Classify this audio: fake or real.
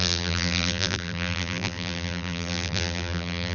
fake